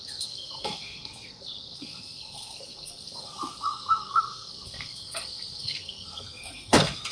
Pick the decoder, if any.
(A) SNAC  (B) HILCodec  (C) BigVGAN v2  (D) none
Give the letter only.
A